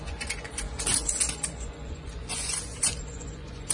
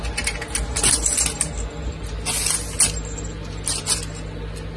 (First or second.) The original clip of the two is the second